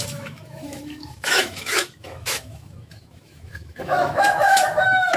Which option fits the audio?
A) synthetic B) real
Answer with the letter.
A